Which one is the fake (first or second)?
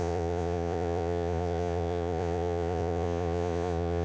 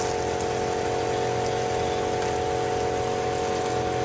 first